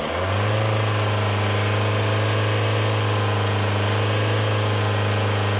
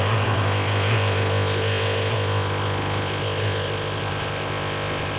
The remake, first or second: second